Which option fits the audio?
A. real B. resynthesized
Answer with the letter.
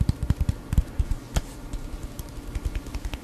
A